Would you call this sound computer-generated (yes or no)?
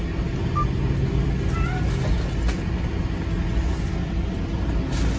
no